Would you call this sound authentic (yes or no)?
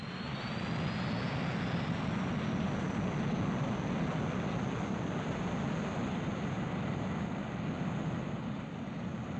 yes